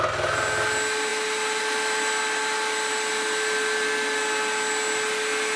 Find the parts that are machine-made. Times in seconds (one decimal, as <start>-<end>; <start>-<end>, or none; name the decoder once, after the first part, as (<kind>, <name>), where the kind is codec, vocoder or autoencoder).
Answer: none